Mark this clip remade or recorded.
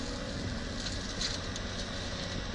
recorded